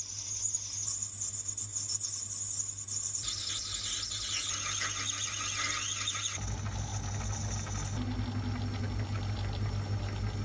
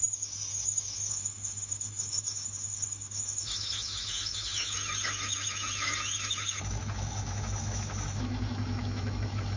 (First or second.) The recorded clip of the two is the first